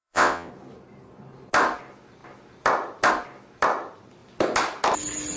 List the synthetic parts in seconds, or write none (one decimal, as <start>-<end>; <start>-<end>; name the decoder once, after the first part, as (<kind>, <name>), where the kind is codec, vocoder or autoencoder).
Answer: 0.0-0.5 (vocoder, WaveNeXt)